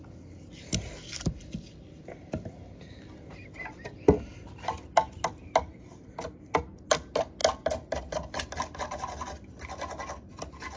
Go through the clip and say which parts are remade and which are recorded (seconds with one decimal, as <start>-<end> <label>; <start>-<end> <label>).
0.0-10.8 recorded